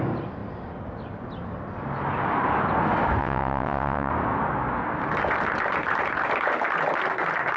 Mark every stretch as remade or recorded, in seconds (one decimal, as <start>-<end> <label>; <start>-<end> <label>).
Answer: 0.0-3.2 recorded; 3.2-4.1 remade; 4.1-7.6 recorded